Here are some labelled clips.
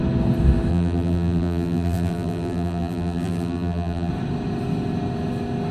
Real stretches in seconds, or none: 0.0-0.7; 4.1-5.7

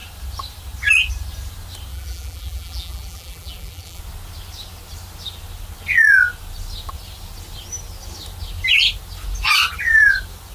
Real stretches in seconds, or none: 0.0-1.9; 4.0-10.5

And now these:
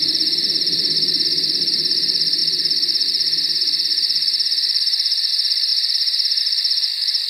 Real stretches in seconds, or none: none

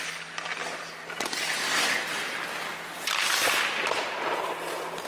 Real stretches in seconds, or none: 0.0-5.1